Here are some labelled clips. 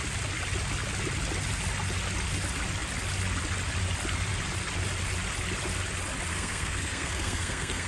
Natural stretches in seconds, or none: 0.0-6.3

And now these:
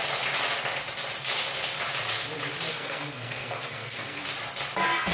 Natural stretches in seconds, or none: 0.0-2.7; 4.2-5.1

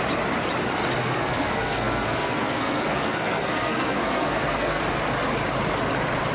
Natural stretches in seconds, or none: 0.0-1.0; 4.8-6.3

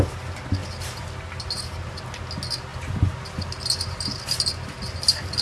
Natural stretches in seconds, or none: 0.0-5.4

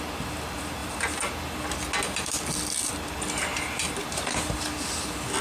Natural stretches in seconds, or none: 0.0-5.4

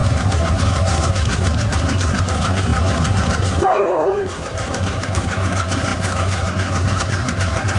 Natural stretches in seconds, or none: none

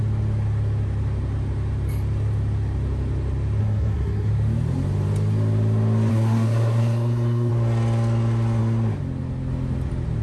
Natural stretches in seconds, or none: 0.0-3.6; 4.3-6.1; 7.5-10.2

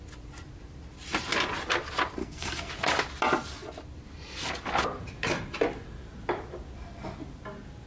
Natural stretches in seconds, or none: 0.0-2.2; 2.7-7.9